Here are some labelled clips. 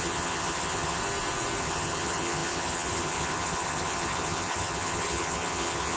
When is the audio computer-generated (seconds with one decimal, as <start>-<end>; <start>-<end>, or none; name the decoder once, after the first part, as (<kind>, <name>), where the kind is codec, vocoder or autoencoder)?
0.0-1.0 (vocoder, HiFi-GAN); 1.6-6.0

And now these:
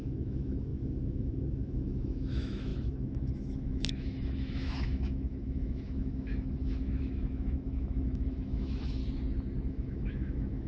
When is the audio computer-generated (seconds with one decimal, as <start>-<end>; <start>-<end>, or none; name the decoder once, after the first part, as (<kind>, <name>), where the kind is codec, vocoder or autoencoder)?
0.0-9.0 (autoencoder, DAC-VAE); 9.7-10.7

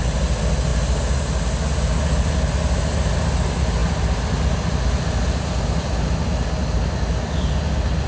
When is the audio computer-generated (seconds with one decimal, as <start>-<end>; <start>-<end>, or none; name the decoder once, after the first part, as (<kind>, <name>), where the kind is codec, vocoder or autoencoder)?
none

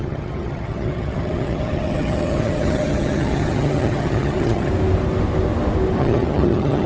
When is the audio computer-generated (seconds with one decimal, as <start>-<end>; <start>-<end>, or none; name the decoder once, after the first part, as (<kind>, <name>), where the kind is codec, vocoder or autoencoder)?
0.0-4.7 (vocoder, HiFi-GAN); 6.0-6.9

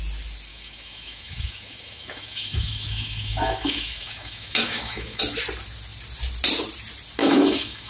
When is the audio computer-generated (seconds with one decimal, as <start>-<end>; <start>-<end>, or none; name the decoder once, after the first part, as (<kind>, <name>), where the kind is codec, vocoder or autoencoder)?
0.5-5.2 (autoencoder, DAC-VAE); 7.2-7.9

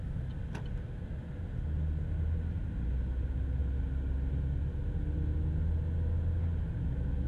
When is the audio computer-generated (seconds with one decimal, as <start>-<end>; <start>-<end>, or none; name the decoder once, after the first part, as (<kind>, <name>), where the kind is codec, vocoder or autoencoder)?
none

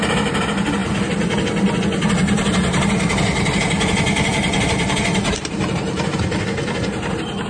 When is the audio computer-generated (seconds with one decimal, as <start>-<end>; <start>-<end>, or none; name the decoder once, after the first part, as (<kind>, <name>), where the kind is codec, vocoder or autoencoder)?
4.3-6.2 (vocoder, BigVGAN v2)